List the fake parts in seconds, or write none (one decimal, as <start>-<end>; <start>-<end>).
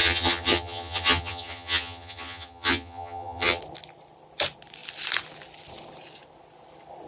0.0-3.6